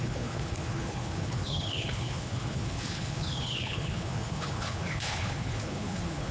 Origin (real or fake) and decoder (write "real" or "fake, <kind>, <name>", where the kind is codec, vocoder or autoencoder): fake, codec, HILCodec